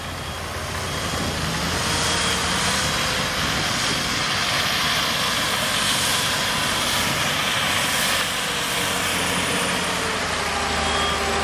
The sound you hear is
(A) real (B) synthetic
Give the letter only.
A